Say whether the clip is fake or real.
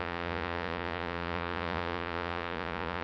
fake